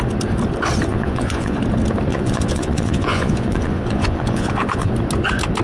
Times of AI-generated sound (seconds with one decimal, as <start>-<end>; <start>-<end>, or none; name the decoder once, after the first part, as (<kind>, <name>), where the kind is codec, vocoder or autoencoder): 0.9-1.6 (vocoder, Vocos); 2.1-4.9